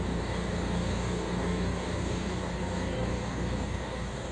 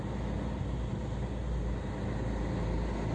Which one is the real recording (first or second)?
second